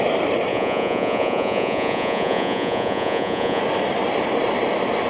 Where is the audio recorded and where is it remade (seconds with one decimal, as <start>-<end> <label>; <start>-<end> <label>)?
0.0-0.5 recorded; 0.5-3.6 remade; 3.6-5.1 recorded